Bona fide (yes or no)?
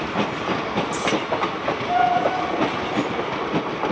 yes